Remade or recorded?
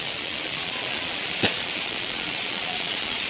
remade